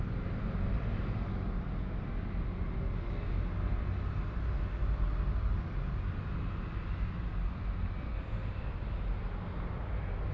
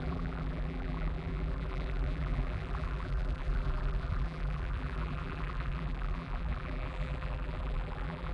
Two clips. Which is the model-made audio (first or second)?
second